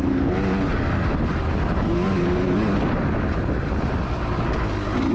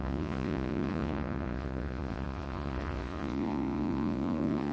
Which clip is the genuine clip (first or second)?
first